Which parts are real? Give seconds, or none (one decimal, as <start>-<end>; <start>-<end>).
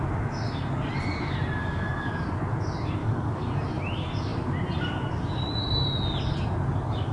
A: 0.0-1.6; 2.1-3.0; 3.5-7.1